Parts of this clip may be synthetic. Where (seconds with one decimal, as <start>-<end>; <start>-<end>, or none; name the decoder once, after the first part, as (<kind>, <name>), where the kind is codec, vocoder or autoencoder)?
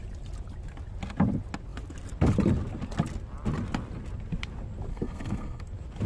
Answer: 4.9-5.6 (codec, SNAC)